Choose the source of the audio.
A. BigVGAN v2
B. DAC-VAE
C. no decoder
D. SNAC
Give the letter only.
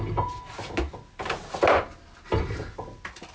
C